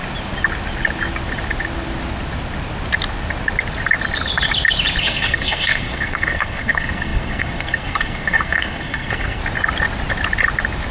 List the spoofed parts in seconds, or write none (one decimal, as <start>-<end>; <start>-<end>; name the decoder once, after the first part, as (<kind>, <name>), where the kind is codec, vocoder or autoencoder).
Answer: 5.0-9.4 (codec, SNAC)